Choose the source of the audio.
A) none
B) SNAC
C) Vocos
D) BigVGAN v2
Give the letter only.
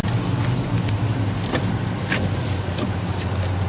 A